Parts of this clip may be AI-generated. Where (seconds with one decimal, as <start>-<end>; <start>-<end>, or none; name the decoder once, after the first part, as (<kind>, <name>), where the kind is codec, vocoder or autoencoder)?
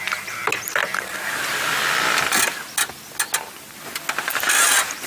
none